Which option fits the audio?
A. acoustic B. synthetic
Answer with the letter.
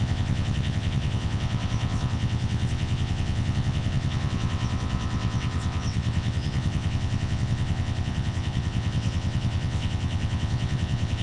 B